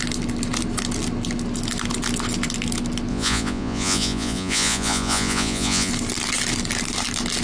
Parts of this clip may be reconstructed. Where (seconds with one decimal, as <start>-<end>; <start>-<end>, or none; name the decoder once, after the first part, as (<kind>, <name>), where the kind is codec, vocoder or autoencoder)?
3.1-5.9 (vocoder, Vocos)